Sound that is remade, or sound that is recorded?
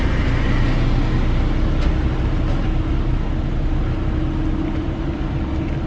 recorded